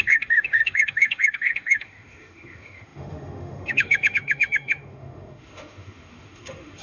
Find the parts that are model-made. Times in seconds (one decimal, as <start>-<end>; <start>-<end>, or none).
0.0-6.8